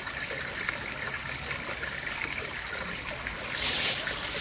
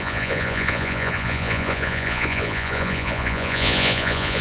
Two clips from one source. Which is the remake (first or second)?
second